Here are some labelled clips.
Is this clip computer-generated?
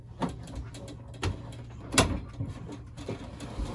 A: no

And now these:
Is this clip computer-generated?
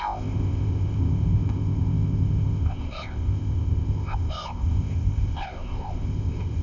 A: yes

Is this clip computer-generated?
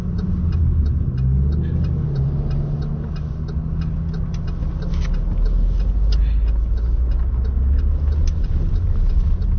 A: no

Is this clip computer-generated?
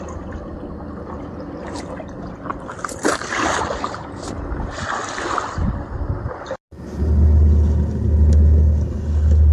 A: no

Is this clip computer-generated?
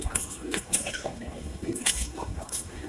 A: yes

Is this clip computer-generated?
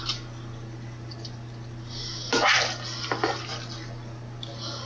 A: no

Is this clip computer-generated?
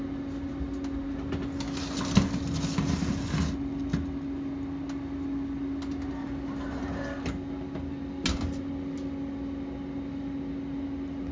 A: no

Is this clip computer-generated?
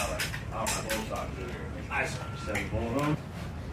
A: no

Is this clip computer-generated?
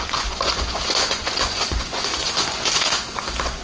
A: yes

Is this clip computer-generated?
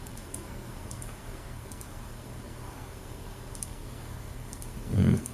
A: yes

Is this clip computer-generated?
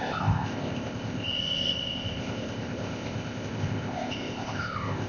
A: yes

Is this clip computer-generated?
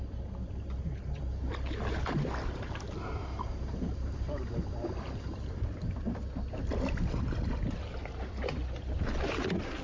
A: no